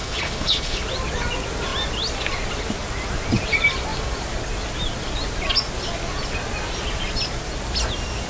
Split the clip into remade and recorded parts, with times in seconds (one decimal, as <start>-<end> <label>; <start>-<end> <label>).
0.0-0.8 remade; 0.8-8.3 recorded